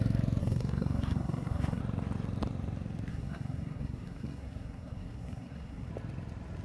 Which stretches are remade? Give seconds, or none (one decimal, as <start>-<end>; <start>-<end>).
0.4-1.8; 3.1-5.9